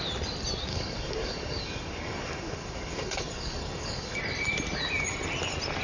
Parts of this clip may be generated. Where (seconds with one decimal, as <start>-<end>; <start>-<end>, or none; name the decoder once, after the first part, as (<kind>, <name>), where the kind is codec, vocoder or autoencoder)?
0.7-4.2 (codec, DAC)

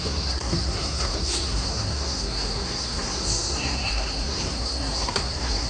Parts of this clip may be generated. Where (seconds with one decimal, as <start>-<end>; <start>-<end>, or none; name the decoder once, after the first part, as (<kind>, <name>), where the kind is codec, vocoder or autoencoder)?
0.0-5.7 (codec, SNAC)

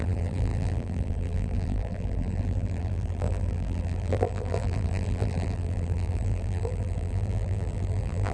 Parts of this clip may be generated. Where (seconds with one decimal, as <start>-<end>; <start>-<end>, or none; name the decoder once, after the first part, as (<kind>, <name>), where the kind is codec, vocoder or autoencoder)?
0.0-8.3 (vocoder, BigVGAN v2)

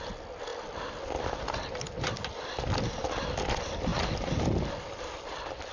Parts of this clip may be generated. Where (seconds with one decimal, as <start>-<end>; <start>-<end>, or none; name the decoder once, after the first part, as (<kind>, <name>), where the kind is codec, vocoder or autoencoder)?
0.5-2.1 (vocoder, BigVGAN v2)

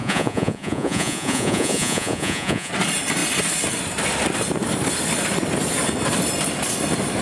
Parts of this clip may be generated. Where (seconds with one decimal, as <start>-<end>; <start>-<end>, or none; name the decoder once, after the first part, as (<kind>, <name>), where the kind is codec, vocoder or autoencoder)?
0.0-2.7 (vocoder, Vocos)

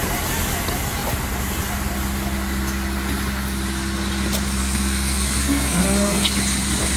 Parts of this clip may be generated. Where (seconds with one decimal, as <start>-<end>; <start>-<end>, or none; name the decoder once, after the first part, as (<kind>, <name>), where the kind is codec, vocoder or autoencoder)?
4.6-6.3 (codec, SNAC)